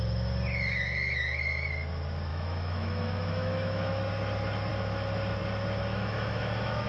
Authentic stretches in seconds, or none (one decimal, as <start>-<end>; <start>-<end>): 0.0-2.3; 4.1-5.9